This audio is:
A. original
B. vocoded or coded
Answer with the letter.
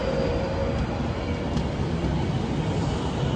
A